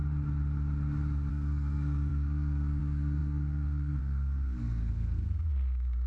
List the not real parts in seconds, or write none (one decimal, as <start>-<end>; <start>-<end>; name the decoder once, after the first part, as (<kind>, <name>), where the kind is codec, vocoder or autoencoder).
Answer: 1.3-6.1 (codec, SNAC)